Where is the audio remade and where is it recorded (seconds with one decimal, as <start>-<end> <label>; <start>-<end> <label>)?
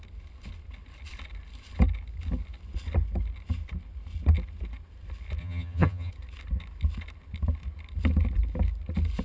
0.0-5.4 recorded; 5.4-6.1 remade; 6.1-9.2 recorded